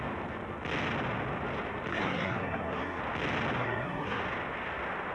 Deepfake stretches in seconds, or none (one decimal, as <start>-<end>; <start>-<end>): 1.9-3.0; 3.6-4.2